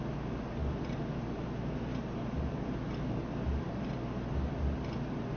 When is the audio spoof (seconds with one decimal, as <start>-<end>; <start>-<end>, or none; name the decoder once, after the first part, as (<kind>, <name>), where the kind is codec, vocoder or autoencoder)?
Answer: none